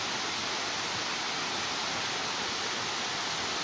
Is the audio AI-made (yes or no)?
no